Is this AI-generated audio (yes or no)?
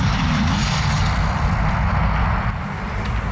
no